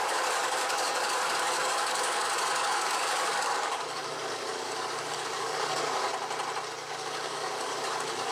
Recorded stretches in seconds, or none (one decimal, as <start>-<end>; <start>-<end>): 6.1-6.9